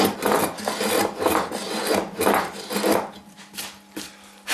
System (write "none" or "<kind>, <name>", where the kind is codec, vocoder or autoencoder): none